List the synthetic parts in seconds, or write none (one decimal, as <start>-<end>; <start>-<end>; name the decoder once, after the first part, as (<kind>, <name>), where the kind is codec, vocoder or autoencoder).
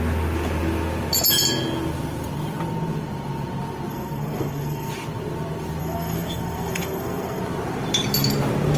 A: 3.9-4.9 (codec, SNAC); 5.8-7.4